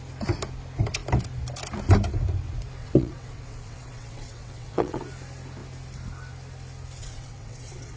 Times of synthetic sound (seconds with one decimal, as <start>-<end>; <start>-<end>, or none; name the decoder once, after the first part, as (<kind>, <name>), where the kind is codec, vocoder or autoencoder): 2.8-5.0 (vocoder, WaveNeXt); 7.0-8.0